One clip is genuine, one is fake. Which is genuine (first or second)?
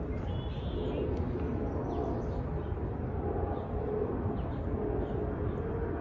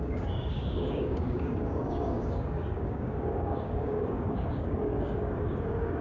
first